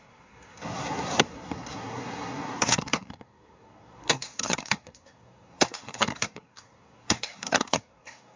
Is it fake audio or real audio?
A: fake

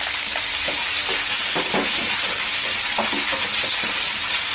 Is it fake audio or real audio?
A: real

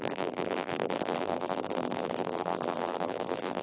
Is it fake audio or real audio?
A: fake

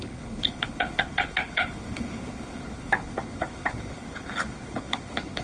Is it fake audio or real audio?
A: fake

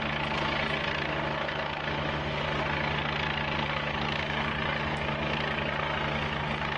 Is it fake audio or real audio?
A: real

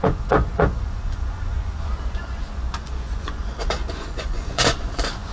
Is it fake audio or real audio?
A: fake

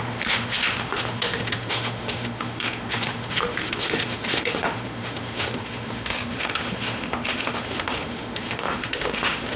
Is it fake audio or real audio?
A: fake